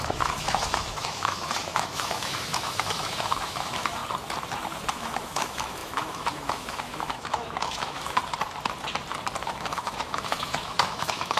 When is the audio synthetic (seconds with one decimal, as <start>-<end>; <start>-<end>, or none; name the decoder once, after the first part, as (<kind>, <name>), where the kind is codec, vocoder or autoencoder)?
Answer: 0.0-4.0 (autoencoder, DAC-VAE); 4.9-8.2; 9.4-11.4